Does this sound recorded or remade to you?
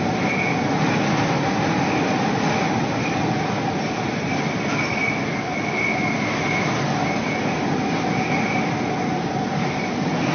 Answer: recorded